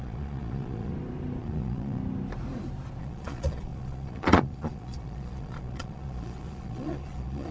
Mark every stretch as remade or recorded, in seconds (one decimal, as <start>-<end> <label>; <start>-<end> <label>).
0.0-0.9 remade; 0.9-1.4 recorded; 1.4-2.0 remade; 2.0-3.0 recorded; 3.0-7.5 remade